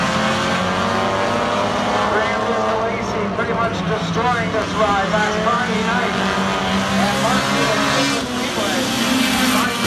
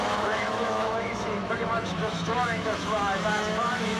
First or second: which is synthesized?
second